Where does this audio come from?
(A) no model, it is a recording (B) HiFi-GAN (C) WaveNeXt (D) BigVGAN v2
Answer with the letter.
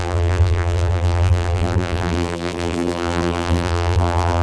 D